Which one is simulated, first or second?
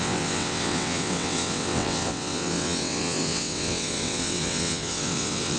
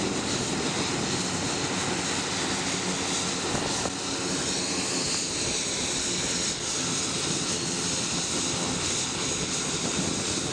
first